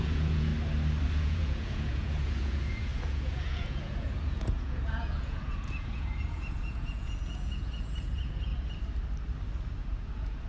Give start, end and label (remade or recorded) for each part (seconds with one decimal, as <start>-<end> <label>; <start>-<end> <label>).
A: 0.0-0.5 remade; 0.5-1.1 recorded; 1.1-8.5 remade; 8.5-9.8 recorded; 9.8-10.5 remade